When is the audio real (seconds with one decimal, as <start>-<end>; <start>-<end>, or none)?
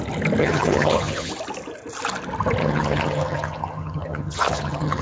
0.0-0.4; 1.3-2.6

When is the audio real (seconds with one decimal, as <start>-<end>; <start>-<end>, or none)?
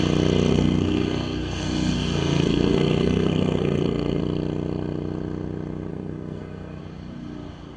0.0-0.5; 4.2-5.9; 6.8-7.8